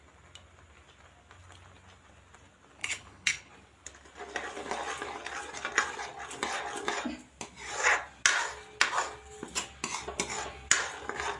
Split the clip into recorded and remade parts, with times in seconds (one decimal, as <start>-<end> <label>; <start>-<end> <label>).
0.0-2.8 recorded; 2.8-3.5 remade; 3.5-11.4 recorded